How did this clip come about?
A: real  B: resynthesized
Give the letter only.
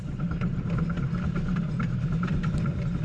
A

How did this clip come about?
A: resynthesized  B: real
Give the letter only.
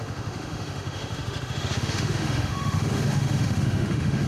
A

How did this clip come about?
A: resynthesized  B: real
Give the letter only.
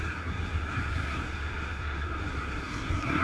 A